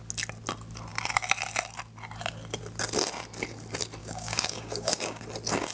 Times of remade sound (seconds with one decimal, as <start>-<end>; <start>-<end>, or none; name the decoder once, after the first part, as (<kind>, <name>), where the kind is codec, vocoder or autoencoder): 4.0-5.2 (codec, DAC)